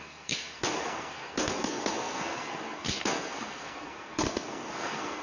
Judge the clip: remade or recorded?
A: remade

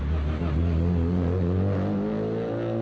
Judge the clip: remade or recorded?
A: recorded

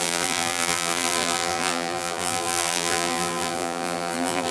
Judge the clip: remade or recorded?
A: remade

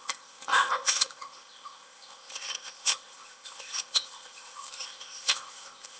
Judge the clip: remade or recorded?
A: remade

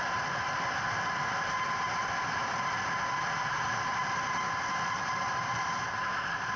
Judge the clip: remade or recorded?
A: recorded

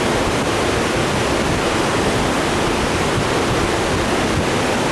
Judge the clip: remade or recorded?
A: recorded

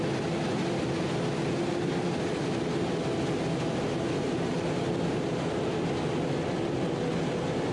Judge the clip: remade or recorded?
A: recorded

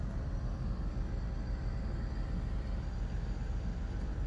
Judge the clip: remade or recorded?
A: recorded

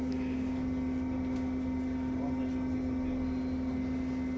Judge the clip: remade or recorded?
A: recorded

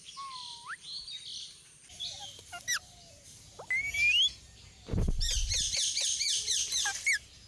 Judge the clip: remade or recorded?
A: recorded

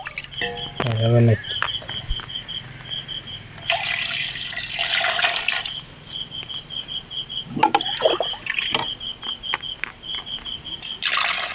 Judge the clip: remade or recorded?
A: recorded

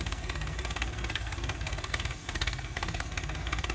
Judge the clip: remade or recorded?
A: remade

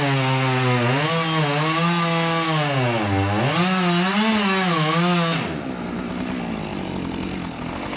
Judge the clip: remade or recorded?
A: recorded